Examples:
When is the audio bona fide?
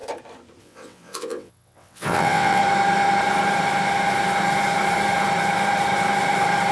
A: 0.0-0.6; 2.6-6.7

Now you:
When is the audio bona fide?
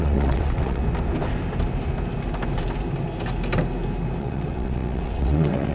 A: 0.8-4.2